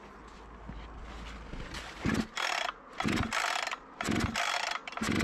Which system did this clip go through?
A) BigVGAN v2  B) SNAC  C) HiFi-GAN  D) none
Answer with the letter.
D